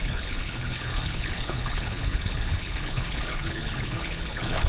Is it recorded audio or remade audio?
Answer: remade